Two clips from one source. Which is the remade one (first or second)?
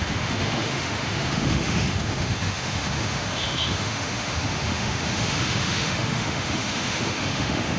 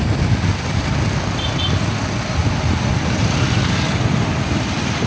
first